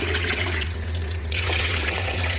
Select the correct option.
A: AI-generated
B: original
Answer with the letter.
A